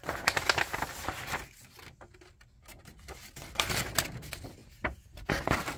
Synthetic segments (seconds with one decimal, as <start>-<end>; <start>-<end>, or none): none

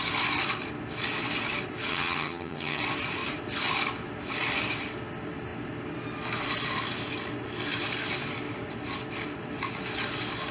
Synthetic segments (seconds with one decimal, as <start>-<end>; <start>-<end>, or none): 1.9-2.8

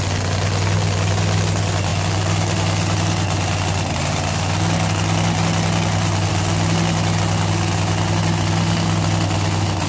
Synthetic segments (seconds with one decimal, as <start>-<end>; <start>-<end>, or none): none